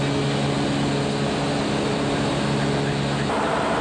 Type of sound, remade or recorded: recorded